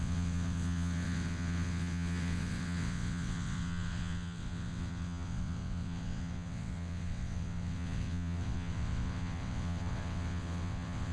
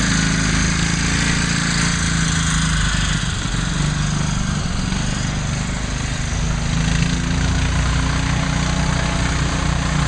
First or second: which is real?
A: second